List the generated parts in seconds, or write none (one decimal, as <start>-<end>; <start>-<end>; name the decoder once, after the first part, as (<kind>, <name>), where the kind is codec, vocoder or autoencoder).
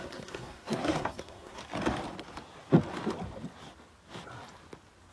0.0-1.6 (codec, SNAC)